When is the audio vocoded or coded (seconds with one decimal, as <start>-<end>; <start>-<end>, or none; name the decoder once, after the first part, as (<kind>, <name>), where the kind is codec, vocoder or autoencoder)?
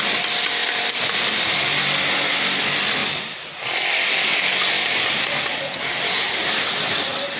0.6-1.6 (vocoder, BigVGAN v2); 4.8-5.8